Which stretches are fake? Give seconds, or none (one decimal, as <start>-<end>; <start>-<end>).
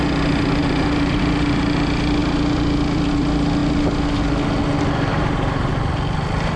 0.6-1.2; 5.1-5.7